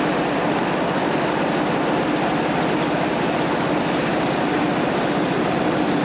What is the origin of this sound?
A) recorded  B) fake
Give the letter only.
A